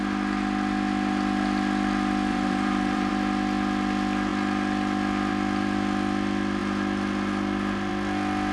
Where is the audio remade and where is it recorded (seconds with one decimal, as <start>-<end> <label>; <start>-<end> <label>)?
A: 0.0-2.3 recorded; 2.3-3.1 remade; 3.1-8.5 recorded